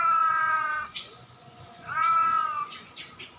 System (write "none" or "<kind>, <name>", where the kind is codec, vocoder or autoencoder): vocoder, Vocos